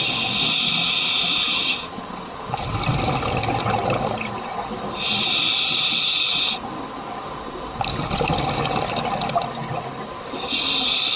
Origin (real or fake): real